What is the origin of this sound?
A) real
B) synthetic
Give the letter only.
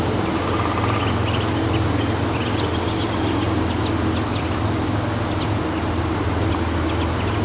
A